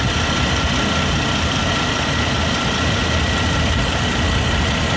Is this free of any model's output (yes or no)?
yes